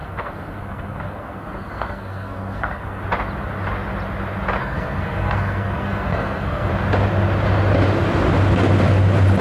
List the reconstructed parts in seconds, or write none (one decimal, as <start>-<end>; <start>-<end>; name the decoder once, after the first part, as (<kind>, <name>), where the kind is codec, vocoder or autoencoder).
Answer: 0.0-3.0 (codec, SNAC); 4.6-6.7